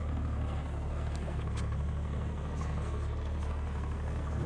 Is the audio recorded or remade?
remade